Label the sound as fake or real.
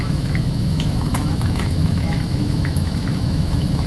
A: fake